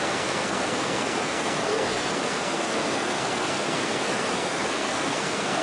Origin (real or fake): fake